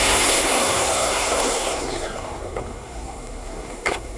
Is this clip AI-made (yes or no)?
yes